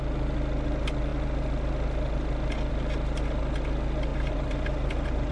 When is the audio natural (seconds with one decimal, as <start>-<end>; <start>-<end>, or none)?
0.0-4.1